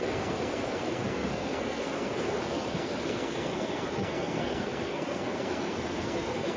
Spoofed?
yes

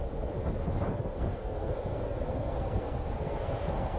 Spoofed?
yes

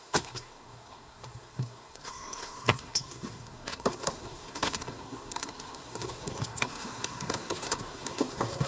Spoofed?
yes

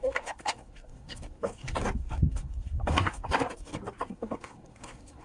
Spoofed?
yes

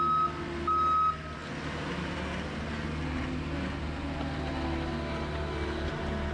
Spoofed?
no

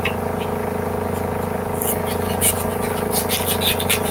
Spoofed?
no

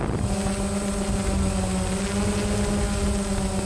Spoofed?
no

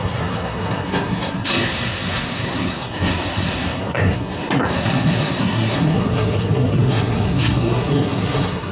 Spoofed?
yes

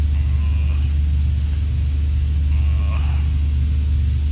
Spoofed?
no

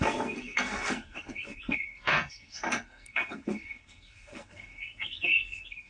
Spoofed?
yes